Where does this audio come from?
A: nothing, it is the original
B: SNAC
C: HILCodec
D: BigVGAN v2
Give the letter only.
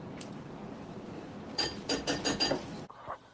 D